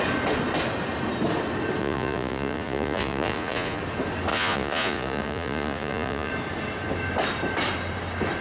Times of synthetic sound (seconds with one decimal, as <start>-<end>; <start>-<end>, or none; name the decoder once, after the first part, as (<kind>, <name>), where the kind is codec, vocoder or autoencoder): 1.8-3.8 (vocoder, Vocos); 4.3-6.3